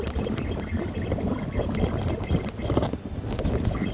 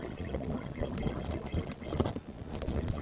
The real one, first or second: first